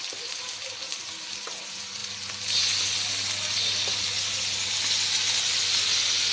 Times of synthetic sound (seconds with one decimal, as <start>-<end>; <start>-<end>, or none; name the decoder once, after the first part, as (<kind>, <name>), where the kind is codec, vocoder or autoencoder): none